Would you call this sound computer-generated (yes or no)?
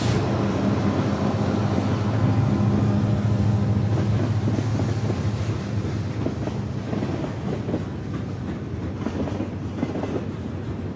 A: no